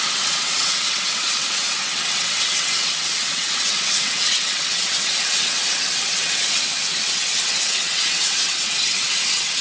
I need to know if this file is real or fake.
fake